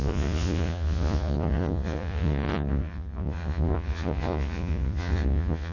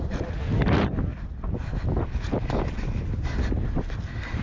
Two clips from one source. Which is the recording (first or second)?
second